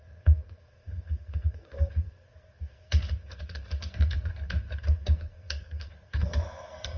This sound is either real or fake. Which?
fake